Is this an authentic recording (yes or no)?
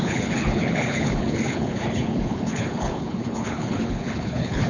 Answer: no